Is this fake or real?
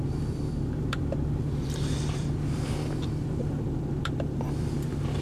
fake